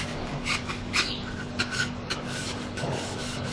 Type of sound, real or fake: fake